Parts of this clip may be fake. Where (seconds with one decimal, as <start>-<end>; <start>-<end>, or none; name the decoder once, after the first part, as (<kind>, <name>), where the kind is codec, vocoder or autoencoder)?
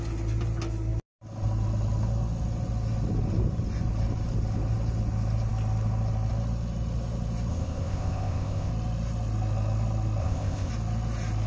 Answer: 7.5-8.7 (codec, ZipCodec); 10.2-10.7